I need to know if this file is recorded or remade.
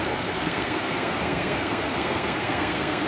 remade